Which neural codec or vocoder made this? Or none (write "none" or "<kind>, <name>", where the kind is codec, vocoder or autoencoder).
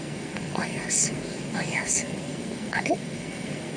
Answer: codec, SNAC